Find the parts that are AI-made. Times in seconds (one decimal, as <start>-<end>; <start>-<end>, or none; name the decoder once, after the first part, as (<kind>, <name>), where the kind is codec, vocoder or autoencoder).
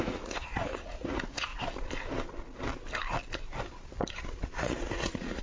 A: 0.0-1.5 (vocoder, Vocos); 4.1-5.4